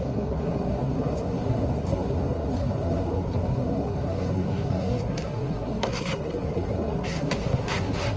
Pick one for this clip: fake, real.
fake